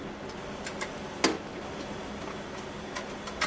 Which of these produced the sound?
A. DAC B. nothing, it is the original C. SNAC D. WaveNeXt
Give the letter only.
B